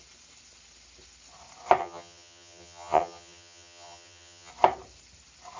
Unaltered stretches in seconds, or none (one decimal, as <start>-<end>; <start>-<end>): 0.0-1.8; 4.5-5.6